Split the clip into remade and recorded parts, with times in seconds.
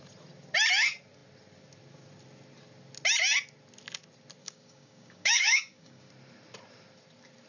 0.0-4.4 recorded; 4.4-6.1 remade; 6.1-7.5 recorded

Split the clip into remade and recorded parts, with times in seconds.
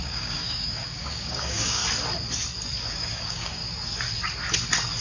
0.0-1.8 remade; 1.8-2.9 recorded; 2.9-3.6 remade; 3.6-5.0 recorded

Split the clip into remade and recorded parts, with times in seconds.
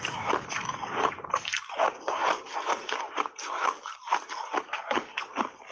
0.0-1.5 remade; 1.5-2.0 recorded; 2.0-2.5 remade; 2.5-4.7 recorded; 4.7-5.7 remade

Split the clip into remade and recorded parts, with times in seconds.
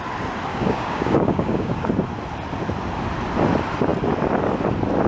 0.0-0.5 recorded; 0.5-1.9 remade; 1.9-5.1 recorded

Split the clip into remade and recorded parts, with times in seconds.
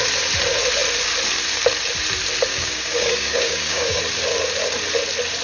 0.0-2.5 recorded; 2.5-4.0 remade; 4.0-5.4 recorded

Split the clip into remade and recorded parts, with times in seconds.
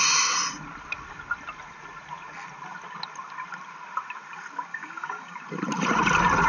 0.0-4.7 recorded; 4.7-5.4 remade; 5.4-6.5 recorded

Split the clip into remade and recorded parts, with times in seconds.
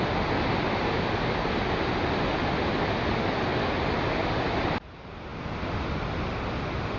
0.0-7.0 recorded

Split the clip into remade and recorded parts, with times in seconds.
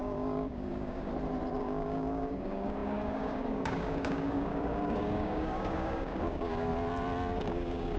0.0-1.1 remade; 1.1-1.6 recorded; 1.6-6.7 remade; 6.7-7.4 recorded; 7.4-8.0 remade